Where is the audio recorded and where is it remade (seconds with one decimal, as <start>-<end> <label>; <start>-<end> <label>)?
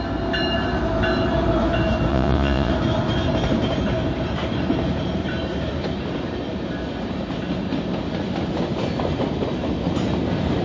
0.0-2.1 recorded; 2.1-2.7 remade; 2.7-10.6 recorded